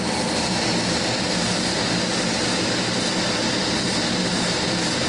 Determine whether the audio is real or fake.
real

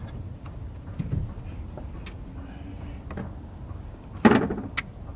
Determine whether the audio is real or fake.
real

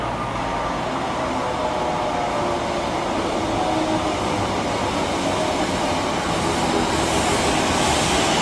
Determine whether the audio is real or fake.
real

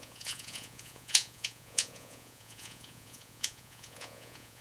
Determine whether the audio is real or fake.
fake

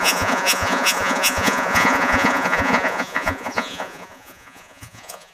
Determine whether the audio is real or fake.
fake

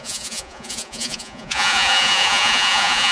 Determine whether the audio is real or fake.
fake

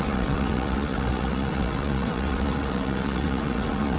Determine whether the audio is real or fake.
fake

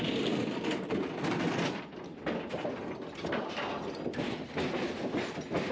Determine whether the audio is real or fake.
real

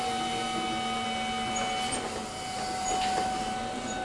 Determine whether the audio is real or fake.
real